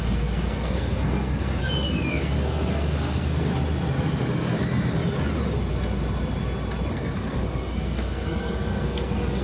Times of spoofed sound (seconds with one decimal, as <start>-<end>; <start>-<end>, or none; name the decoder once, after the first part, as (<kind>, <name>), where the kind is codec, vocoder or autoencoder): 0.0-1.6 (codec, SNAC); 2.1-3.5; 6.9-9.4